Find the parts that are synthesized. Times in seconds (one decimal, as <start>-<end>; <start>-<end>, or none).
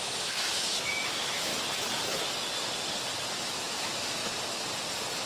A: 0.0-1.5; 3.3-4.2